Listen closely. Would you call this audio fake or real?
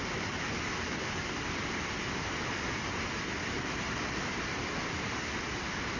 real